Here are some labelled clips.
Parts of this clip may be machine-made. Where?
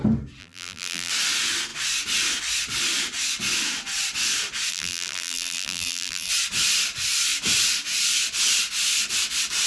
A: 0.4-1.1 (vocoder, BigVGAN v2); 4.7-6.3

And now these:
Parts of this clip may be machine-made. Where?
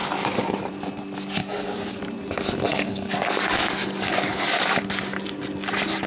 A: 0.0-0.7 (codec, DAC); 1.4-2.0; 2.7-4.8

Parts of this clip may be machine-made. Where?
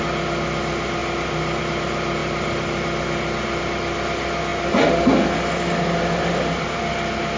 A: none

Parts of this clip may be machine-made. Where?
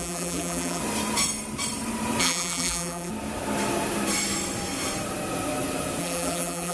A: 0.0-0.8 (vocoder, BigVGAN v2); 2.2-3.1; 6.0-6.7